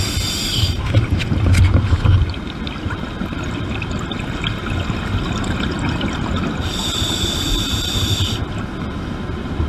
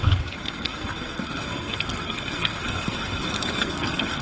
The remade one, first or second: second